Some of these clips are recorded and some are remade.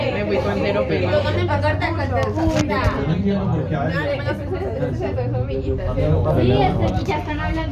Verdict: recorded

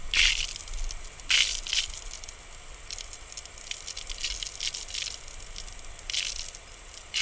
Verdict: recorded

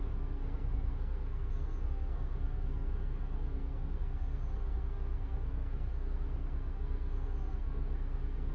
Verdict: remade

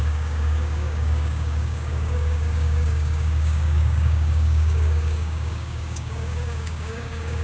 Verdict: remade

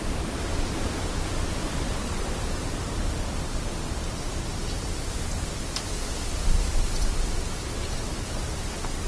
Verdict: recorded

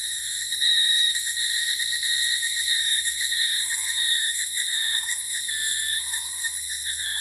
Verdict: remade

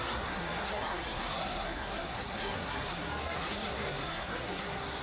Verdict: remade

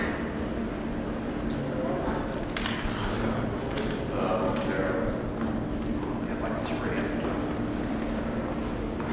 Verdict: recorded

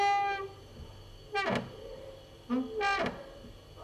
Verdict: recorded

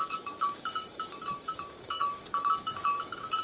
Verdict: remade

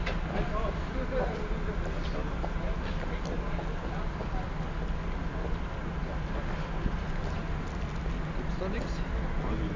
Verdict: recorded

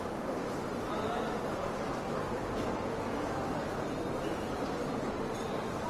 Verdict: recorded